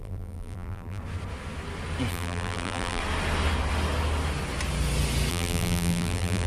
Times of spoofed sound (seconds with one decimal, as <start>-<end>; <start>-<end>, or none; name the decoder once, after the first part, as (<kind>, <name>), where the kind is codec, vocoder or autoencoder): 0.0-1.0 (vocoder, BigVGAN v2); 2.1-3.0; 5.3-6.5